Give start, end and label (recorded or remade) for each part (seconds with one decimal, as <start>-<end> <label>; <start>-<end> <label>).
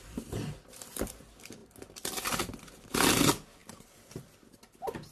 0.0-5.1 recorded